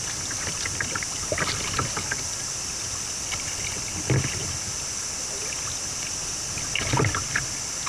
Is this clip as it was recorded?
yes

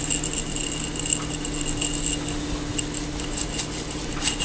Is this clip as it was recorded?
yes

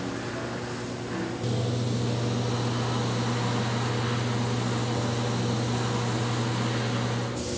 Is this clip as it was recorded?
yes